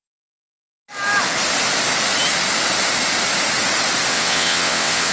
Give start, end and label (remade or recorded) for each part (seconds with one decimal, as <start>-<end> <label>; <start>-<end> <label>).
0.0-4.1 recorded; 4.1-5.1 remade